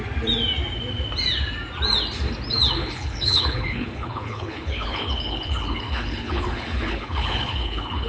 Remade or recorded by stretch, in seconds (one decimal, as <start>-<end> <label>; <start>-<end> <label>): 0.0-2.8 recorded; 2.8-8.1 remade